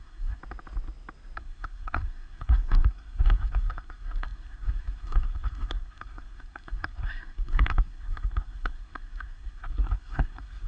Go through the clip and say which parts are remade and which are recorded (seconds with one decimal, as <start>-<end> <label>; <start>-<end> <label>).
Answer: 0.0-0.4 remade; 0.4-1.4 recorded; 1.4-10.7 remade